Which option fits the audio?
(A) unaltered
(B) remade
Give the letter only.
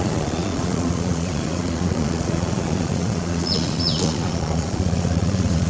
B